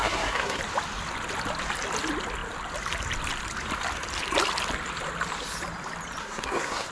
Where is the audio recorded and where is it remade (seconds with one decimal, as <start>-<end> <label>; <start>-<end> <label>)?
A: 0.0-0.6 remade; 0.6-6.2 recorded; 6.2-6.9 remade